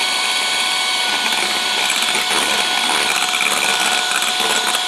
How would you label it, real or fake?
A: real